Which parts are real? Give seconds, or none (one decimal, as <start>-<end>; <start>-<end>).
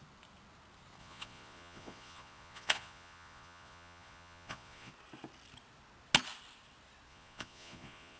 0.0-1.0; 4.9-7.1